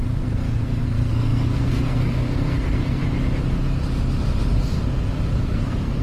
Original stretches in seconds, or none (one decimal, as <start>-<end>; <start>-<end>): 3.0-5.4